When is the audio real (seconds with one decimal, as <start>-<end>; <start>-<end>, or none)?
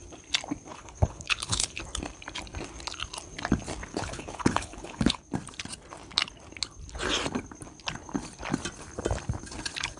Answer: 0.0-0.7; 1.8-3.9; 5.2-10.0